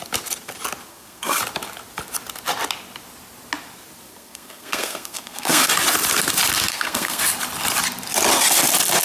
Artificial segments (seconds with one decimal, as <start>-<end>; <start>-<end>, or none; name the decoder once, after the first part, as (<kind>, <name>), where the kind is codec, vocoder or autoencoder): 0.9-1.4 (codec, SNAC); 4.1-5.7; 6.7-7.2